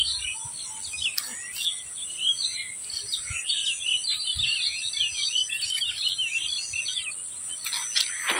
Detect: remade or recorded recorded